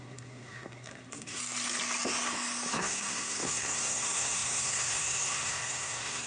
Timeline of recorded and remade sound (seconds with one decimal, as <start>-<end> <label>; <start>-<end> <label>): 0.0-1.4 remade; 1.4-2.7 recorded; 2.7-6.3 remade